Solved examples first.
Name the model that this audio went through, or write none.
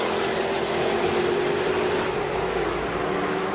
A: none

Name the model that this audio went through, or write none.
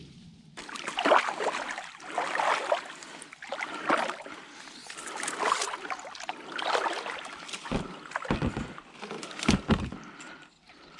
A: none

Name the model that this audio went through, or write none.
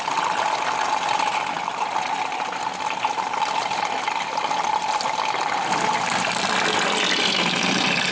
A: none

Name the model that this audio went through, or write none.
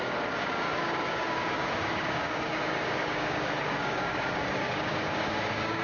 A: codec, DAC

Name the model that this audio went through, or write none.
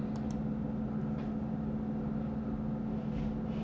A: none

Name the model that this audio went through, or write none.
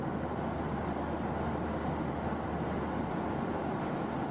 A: none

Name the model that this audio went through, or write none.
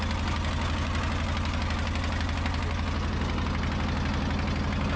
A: none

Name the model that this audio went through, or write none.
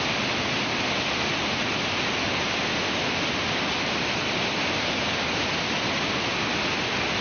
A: none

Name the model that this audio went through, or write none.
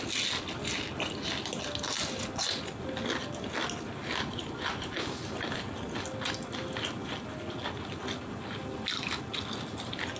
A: none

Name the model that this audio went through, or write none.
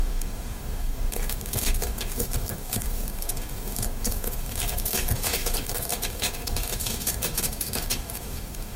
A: codec, DAC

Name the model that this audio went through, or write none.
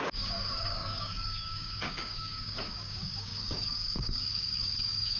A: codec, DAC